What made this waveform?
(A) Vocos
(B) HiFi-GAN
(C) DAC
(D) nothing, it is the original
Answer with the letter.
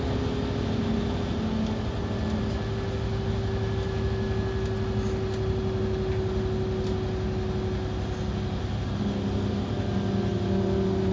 D